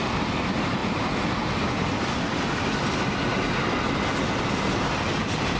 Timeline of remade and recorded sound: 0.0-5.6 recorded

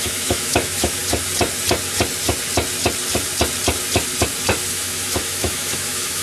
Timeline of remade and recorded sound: 0.0-1.0 remade; 1.0-4.7 recorded; 4.7-6.2 remade